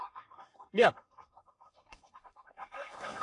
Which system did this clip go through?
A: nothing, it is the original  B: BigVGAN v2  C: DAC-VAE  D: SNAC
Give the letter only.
D